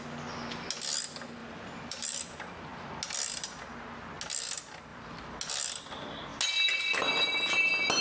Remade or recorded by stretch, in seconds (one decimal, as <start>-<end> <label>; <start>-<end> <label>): 0.0-1.4 recorded; 1.4-2.2 remade; 2.2-8.0 recorded